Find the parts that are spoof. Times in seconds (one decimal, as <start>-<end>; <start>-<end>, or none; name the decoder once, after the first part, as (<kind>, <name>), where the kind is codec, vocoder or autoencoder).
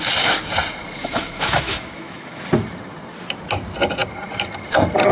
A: 1.0-2.4 (autoencoder, DAC-VAE)